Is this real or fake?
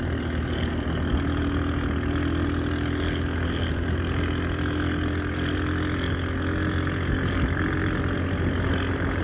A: real